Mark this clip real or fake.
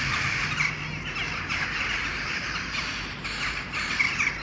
real